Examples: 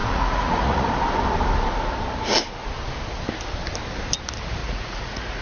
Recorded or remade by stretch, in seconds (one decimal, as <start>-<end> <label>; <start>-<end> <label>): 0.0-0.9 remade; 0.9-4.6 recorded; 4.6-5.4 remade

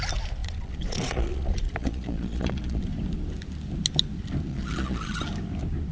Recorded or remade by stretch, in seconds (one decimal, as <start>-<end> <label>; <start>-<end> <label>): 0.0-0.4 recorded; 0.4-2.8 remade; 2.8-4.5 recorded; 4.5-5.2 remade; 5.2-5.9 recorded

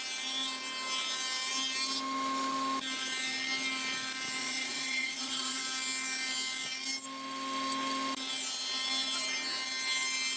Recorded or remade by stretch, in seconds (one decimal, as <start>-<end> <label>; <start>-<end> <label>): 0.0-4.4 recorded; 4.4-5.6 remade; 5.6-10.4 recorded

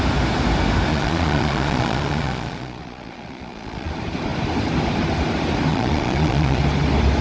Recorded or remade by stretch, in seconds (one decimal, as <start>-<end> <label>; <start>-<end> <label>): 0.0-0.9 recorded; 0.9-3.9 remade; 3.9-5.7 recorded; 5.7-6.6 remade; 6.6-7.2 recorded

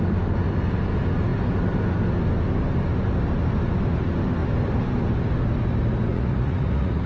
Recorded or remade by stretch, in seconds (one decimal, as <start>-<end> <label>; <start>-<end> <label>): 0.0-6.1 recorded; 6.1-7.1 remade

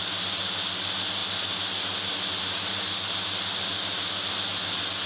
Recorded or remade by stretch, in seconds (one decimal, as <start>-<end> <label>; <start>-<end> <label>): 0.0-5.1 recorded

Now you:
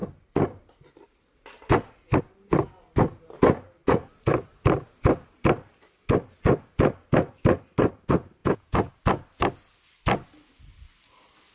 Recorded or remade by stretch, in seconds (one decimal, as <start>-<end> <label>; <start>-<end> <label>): 0.0-8.4 recorded; 8.4-8.9 remade; 8.9-11.5 recorded

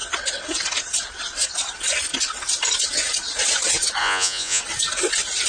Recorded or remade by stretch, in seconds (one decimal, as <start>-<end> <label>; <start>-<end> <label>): 0.0-4.0 recorded; 4.0-4.6 remade; 4.6-5.5 recorded